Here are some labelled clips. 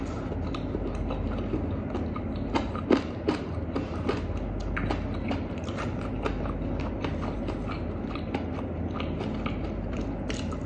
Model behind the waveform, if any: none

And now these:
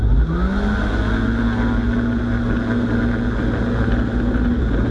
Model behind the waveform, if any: none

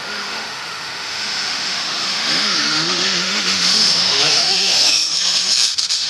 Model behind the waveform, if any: autoencoder, DAC-VAE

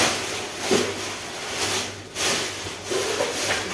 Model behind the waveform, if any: none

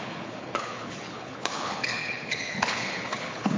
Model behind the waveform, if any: codec, HILCodec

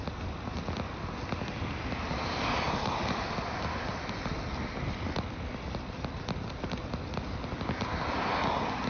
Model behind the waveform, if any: none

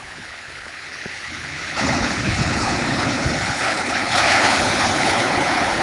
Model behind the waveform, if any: codec, HILCodec